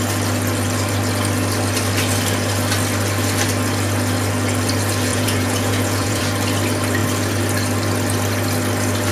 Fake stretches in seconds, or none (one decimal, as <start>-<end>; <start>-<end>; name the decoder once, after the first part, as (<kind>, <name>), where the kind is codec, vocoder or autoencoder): 5.1-6.2 (vocoder, Vocos)